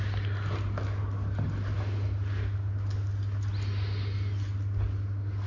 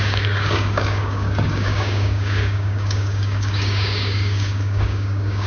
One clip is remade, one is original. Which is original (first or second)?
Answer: first